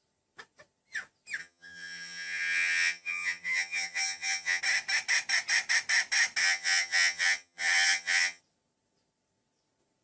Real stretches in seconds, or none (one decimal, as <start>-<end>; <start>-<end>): 0.0-1.4; 4.6-6.4; 8.4-10.0

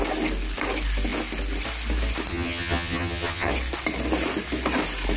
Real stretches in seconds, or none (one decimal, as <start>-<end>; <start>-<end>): 0.0-2.3; 3.5-5.2